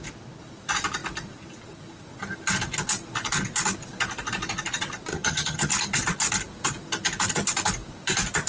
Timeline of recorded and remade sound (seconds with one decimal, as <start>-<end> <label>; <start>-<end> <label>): 0.0-5.1 recorded; 5.1-5.7 remade; 5.7-8.5 recorded